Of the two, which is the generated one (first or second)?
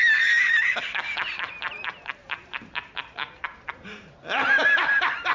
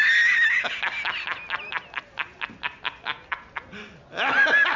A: first